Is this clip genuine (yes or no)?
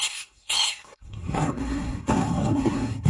no